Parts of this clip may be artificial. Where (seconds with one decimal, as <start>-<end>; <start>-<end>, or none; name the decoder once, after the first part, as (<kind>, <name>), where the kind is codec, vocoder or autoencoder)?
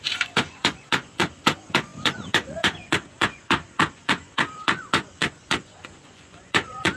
0.0-7.0 (vocoder, Vocos)